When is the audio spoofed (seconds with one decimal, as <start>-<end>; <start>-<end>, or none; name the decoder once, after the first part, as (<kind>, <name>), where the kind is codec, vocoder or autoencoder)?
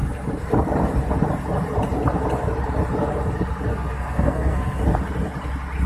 3.7-4.8 (codec, SNAC)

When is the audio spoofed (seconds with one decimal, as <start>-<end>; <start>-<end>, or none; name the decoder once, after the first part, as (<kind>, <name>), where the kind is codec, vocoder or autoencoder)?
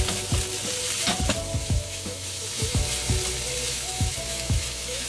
1.6-2.8 (autoencoder, DAC-VAE); 3.7-5.1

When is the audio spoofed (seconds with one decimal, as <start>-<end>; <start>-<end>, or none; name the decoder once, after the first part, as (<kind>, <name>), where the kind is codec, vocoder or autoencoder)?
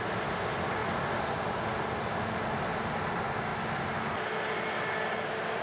none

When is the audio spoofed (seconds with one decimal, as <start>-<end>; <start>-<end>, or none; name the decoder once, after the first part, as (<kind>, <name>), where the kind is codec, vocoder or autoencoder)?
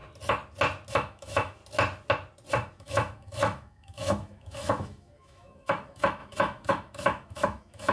0.9-1.6 (autoencoder, DAC-VAE); 2.5-7.9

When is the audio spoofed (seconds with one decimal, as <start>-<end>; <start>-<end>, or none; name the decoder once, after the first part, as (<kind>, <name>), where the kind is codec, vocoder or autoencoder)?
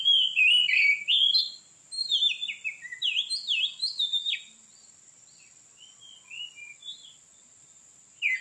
none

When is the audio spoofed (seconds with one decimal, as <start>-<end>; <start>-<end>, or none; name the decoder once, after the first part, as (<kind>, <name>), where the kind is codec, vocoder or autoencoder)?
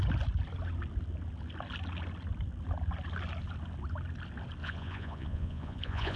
4.6-6.2 (vocoder, Vocos)